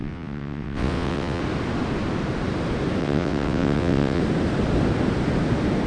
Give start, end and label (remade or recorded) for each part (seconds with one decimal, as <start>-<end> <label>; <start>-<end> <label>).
0.0-1.4 remade; 1.4-3.0 recorded; 3.0-4.2 remade; 4.2-5.9 recorded